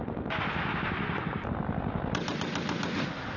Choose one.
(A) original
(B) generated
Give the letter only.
A